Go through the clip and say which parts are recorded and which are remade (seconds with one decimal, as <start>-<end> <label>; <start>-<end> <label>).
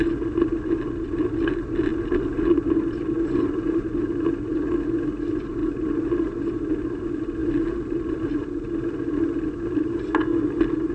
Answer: 0.0-10.9 recorded